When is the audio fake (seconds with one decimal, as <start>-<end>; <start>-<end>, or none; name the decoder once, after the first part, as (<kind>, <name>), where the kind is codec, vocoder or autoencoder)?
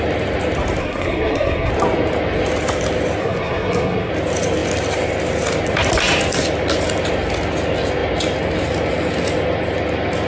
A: 0.8-1.7 (codec, SNAC); 3.2-4.1